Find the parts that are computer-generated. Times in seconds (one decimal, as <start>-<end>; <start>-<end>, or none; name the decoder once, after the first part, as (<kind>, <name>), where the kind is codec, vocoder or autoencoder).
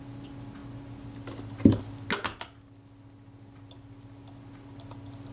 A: none